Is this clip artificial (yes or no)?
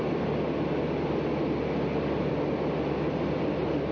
no